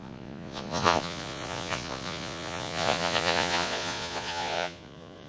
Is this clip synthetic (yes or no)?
yes